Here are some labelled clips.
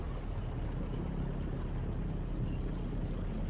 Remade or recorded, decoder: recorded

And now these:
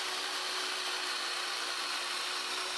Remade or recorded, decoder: recorded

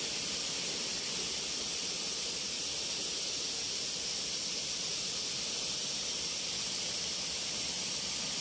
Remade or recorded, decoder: remade, vocoder, BigVGAN v2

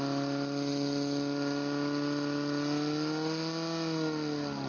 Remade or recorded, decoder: recorded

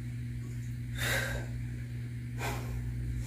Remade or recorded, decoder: recorded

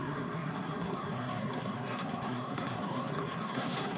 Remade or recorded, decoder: remade, codec, SNAC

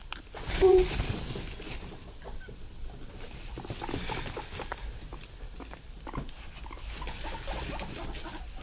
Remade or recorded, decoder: recorded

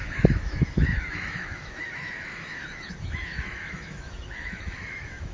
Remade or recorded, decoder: remade, autoencoder, DAC-VAE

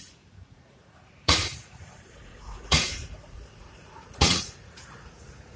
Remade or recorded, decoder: remade, vocoder, Vocos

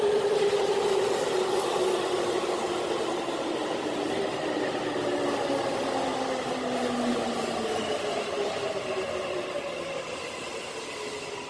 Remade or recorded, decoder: recorded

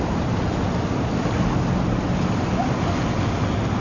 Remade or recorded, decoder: recorded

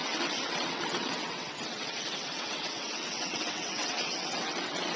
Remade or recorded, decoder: remade, vocoder, WaveNeXt